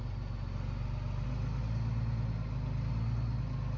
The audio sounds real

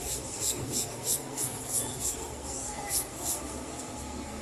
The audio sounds fake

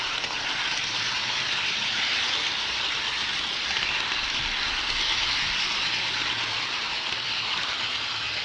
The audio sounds real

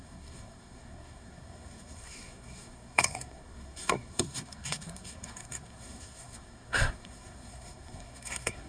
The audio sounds fake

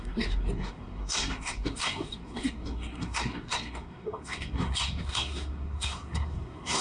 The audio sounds fake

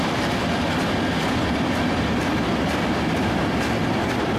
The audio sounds real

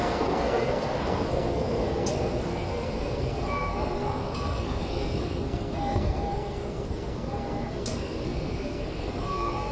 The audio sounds fake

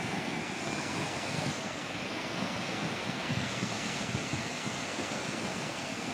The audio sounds fake